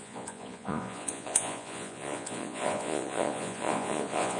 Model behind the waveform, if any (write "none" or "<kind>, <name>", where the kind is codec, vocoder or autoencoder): vocoder, Vocos